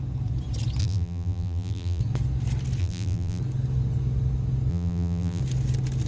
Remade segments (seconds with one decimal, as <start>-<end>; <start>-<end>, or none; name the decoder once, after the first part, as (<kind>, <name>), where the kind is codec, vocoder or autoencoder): 0.8-2.0 (vocoder, BigVGAN v2); 2.8-3.4; 4.7-5.4